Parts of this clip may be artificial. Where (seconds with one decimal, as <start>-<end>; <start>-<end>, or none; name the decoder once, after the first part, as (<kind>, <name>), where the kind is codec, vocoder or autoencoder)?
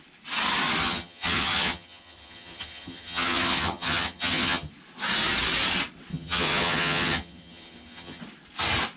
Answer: 0.8-4.7 (vocoder, HiFi-GAN); 6.1-8.2